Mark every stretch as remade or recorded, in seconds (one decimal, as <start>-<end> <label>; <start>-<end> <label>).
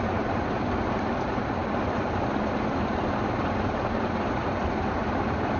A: 0.0-5.6 recorded